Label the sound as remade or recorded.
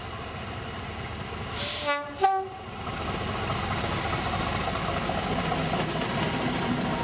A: recorded